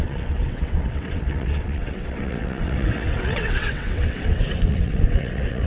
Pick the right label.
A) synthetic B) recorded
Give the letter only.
A